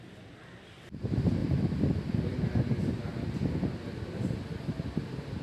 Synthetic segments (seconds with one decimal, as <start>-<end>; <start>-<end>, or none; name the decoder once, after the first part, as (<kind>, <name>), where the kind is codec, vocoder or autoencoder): none